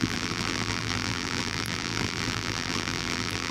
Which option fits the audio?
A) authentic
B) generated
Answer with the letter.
B